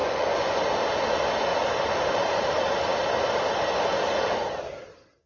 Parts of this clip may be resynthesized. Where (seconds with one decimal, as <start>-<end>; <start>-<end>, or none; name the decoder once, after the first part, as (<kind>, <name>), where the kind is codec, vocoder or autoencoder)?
0.0-0.6 (vocoder, Vocos)